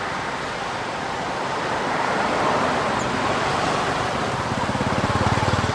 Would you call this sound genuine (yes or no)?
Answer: yes